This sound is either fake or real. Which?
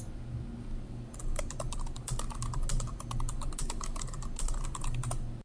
real